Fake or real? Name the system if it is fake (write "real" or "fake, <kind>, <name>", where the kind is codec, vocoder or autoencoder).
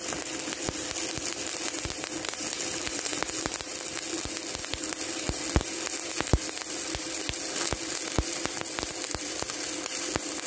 real